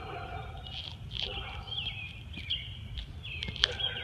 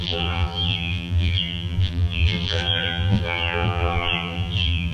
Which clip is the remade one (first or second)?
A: second